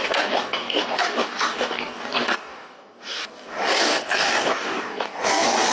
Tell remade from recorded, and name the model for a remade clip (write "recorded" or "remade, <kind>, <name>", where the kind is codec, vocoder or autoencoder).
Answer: remade, codec, DAC